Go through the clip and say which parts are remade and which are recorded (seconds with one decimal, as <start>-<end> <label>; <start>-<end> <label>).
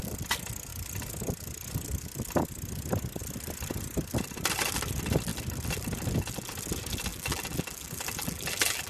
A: 0.0-7.1 recorded; 7.1-8.9 remade